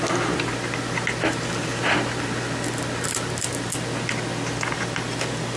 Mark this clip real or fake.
real